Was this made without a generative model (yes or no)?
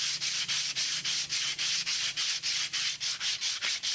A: yes